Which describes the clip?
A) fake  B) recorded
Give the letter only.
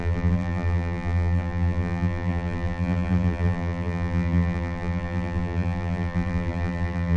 A